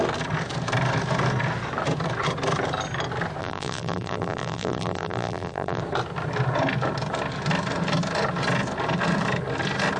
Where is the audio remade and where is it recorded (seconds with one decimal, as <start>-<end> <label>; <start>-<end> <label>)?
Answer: 0.0-3.4 recorded; 3.4-5.8 remade; 5.8-10.0 recorded